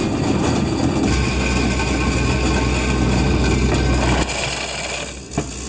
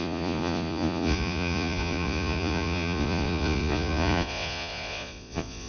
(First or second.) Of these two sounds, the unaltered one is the first